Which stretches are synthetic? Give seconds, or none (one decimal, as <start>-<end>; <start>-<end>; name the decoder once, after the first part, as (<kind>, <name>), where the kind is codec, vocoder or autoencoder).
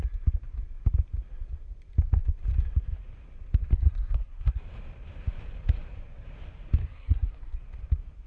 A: 3.7-4.6 (codec, SNAC); 6.8-7.6